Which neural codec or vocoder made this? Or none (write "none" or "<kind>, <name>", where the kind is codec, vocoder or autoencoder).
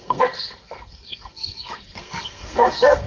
codec, SNAC